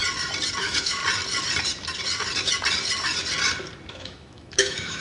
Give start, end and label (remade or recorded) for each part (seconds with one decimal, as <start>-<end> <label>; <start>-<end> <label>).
0.0-0.6 recorded; 0.6-1.0 remade; 1.0-3.9 recorded; 3.9-5.0 remade